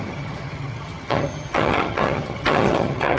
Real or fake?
fake